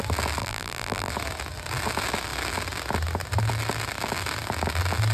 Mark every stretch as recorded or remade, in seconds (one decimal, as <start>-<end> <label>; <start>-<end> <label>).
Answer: 0.0-0.4 recorded; 0.4-1.1 remade; 1.1-5.1 recorded